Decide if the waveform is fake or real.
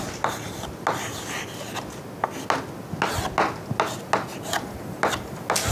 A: real